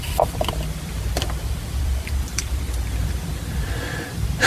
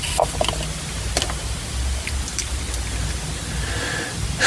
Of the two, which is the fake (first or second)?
first